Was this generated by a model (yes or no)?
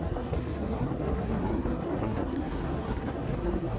yes